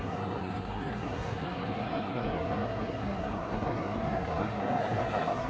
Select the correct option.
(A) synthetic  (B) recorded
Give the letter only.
A